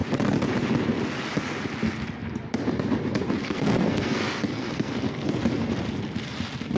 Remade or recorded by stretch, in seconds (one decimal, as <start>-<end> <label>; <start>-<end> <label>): 0.0-3.4 recorded; 3.4-5.4 remade; 5.4-6.8 recorded